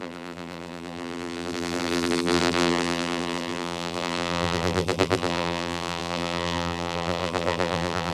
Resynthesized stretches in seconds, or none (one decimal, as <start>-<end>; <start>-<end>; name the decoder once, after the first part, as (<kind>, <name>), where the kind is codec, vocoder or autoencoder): 0.0-8.1 (vocoder, BigVGAN v2)

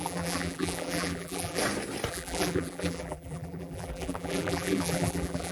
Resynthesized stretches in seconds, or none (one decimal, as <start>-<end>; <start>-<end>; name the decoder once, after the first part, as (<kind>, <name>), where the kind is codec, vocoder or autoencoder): 0.0-1.6 (vocoder, BigVGAN v2); 2.1-5.5

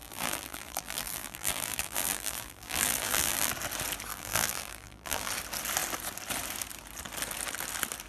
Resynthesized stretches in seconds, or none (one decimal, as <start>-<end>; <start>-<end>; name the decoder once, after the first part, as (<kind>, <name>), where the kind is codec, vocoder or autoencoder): 0.0-3.5 (vocoder, BigVGAN v2); 4.1-5.3

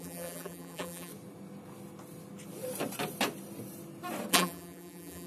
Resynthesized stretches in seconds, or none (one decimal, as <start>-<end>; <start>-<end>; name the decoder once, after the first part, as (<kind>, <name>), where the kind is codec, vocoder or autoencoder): 0.0-1.1 (vocoder, BigVGAN v2); 4.3-5.3